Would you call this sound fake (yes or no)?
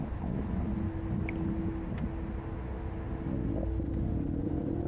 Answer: no